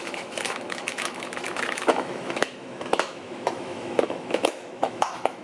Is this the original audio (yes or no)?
no